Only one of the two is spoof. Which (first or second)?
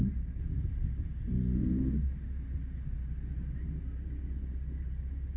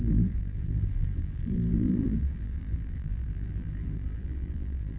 second